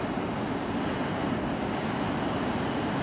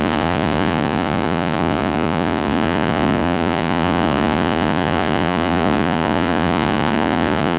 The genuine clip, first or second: first